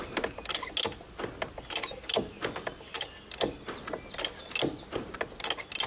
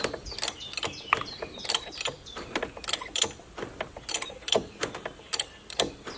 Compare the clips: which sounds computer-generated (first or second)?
second